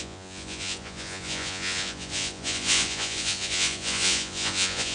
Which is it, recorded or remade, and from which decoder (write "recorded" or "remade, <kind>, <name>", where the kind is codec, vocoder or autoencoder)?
remade, vocoder, Vocos